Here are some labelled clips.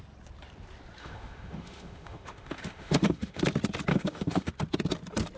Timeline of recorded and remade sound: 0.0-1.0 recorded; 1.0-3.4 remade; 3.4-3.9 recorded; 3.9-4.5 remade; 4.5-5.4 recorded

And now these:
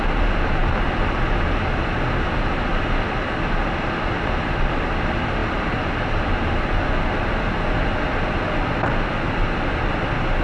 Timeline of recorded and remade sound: 0.0-5.4 recorded; 5.4-6.3 remade; 6.3-10.4 recorded

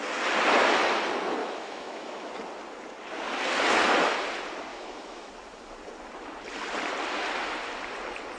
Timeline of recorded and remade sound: 0.0-1.4 recorded; 1.4-2.3 remade; 2.3-4.7 recorded; 4.7-5.3 remade; 5.3-8.4 recorded

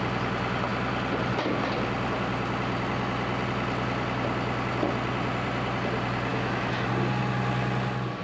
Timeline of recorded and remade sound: 0.0-6.3 recorded; 6.3-6.9 remade; 6.9-8.2 recorded

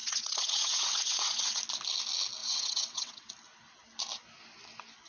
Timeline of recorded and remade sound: 0.0-1.6 remade; 1.6-2.4 recorded; 2.4-3.3 remade; 3.3-5.1 recorded